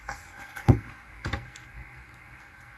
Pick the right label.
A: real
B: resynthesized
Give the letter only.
B